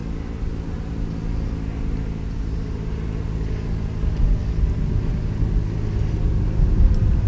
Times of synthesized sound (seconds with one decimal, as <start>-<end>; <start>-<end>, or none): none